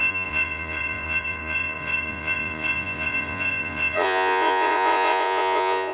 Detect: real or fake fake